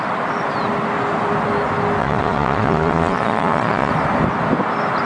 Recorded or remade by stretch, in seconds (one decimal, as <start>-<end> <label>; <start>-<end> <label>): 0.0-2.0 recorded; 2.0-3.9 remade; 3.9-5.1 recorded